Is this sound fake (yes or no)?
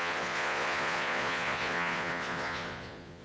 yes